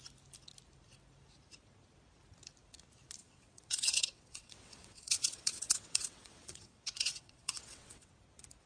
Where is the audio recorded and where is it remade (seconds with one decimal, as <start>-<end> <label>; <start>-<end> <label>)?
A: 0.0-3.2 recorded; 3.2-8.1 remade; 8.1-8.7 recorded